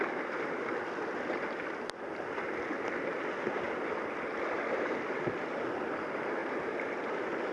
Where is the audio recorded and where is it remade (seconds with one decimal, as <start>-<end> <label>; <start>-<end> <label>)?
0.0-7.5 recorded